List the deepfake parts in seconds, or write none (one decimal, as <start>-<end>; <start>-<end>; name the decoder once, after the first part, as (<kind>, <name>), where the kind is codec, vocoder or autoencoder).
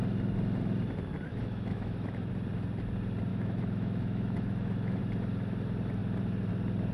1.3-2.3 (autoencoder, DAC-VAE); 3.3-5.0